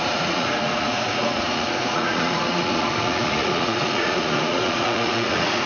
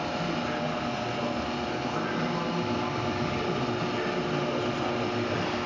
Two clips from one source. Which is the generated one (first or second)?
first